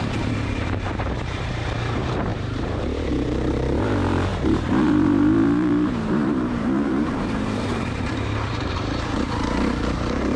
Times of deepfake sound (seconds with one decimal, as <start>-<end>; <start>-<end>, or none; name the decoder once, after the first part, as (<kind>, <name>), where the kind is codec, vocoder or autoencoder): 0.0-10.4 (vocoder, BigVGAN v2)